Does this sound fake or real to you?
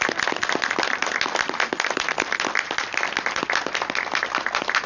real